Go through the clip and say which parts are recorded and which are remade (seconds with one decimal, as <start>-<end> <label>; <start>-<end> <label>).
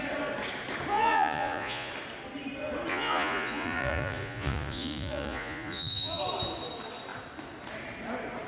0.0-0.9 recorded; 0.9-1.9 remade; 1.9-2.9 recorded; 2.9-6.2 remade; 6.2-8.5 recorded